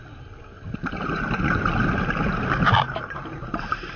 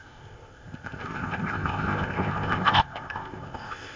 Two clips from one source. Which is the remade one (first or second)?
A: second